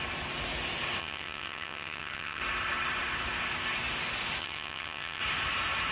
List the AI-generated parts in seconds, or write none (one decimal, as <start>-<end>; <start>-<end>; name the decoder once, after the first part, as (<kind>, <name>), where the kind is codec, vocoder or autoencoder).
1.0-2.4 (vocoder, HiFi-GAN); 4.4-5.2

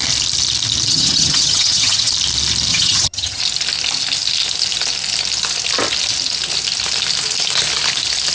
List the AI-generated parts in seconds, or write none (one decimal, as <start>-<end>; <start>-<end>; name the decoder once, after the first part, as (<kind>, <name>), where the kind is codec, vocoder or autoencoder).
0.9-2.1 (vocoder, HiFi-GAN); 2.7-3.4

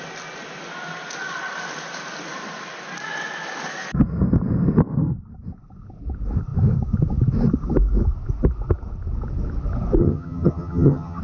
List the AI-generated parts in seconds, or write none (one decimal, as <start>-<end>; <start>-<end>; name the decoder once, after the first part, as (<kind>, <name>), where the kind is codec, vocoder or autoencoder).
10.0-11.2 (vocoder, HiFi-GAN)

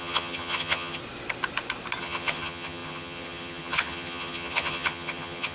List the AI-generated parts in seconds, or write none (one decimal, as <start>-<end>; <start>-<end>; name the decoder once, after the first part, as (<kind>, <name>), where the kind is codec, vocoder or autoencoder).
0.0-1.0 (vocoder, HiFi-GAN); 2.0-5.5

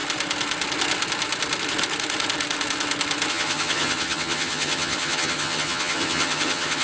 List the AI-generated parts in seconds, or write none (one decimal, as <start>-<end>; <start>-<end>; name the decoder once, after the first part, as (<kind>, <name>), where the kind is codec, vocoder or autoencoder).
3.3-6.8 (vocoder, HiFi-GAN)